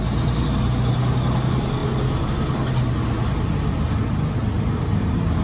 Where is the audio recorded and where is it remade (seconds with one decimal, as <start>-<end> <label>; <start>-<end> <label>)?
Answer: 0.0-5.4 recorded